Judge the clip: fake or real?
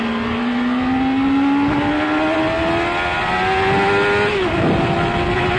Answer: real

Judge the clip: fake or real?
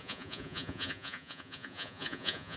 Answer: fake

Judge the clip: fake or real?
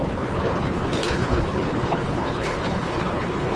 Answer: fake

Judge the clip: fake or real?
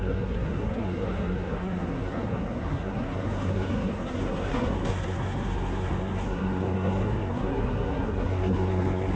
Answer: fake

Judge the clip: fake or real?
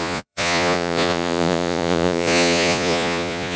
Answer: fake